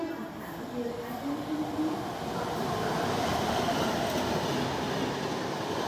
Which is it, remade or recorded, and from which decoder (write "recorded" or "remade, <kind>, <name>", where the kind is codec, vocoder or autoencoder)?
recorded